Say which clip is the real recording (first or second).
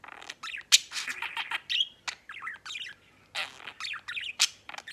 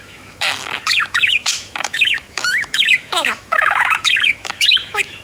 first